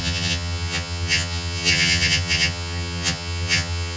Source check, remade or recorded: remade